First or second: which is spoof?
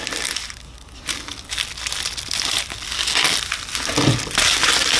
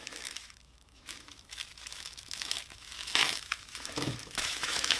second